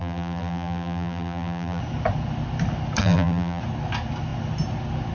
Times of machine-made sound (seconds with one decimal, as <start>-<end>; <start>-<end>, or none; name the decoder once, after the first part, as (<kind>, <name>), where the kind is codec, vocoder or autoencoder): 0.0-1.8 (vocoder, BigVGAN v2); 3.0-3.6

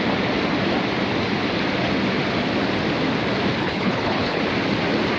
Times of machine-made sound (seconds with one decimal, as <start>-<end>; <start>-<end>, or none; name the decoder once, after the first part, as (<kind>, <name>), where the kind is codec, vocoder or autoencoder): 3.6-4.4 (codec, HILCodec)

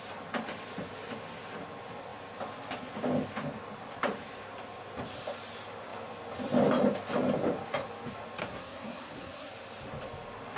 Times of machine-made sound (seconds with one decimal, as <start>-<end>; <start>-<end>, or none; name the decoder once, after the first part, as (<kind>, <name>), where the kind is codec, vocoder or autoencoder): 8.4-9.5 (codec, SNAC)